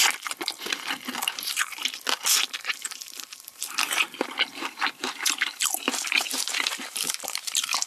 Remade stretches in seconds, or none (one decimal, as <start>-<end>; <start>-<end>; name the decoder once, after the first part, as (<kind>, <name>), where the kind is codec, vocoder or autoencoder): 1.3-1.8 (vocoder, BigVGAN v2); 2.6-7.9